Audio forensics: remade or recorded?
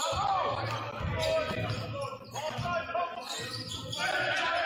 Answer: recorded